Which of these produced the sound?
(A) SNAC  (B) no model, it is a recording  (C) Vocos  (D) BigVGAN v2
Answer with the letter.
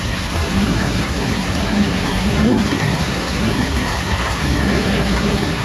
A